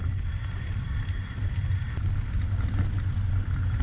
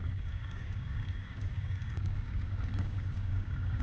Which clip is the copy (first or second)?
second